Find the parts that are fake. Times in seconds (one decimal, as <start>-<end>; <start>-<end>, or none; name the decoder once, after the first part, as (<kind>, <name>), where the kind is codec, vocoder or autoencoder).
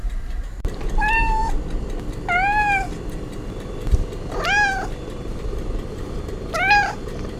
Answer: 0.0-1.4 (vocoder, BigVGAN v2); 5.0-7.4